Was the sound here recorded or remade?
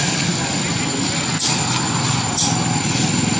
recorded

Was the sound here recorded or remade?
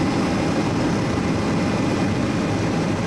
recorded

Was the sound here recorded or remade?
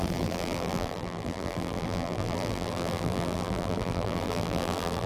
remade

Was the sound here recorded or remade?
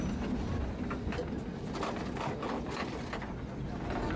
recorded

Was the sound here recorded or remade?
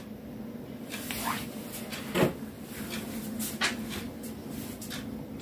recorded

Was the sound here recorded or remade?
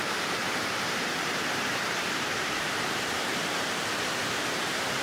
remade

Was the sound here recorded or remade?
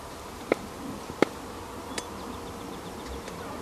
recorded